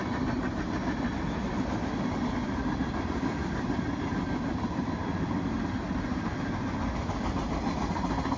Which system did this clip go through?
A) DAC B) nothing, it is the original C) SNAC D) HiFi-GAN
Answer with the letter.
B